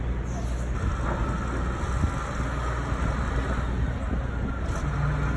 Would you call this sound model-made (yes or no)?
no